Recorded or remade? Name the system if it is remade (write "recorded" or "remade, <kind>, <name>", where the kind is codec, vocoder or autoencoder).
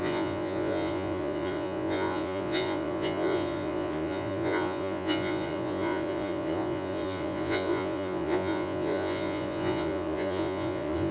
remade, vocoder, Vocos